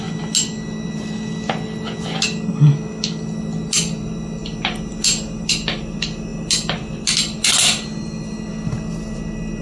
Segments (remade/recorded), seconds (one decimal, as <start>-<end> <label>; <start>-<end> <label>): 0.0-9.6 recorded